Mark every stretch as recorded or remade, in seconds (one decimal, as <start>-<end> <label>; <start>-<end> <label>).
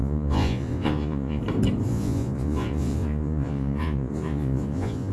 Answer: 0.0-1.4 remade; 1.4-1.9 recorded; 1.9-5.1 remade